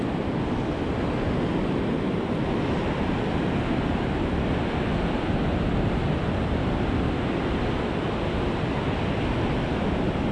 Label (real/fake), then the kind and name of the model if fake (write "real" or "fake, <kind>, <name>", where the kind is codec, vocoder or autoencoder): real